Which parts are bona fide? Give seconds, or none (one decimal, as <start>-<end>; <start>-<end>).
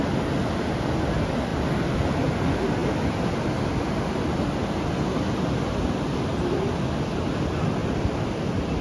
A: 0.0-1.5; 2.1-7.8